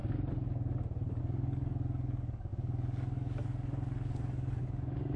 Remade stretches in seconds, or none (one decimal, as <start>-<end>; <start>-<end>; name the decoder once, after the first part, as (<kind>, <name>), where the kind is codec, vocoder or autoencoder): 1.2-5.2 (codec, DAC)